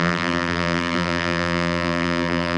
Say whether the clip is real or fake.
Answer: fake